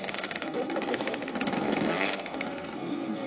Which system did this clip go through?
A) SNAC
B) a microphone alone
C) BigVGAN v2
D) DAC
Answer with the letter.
A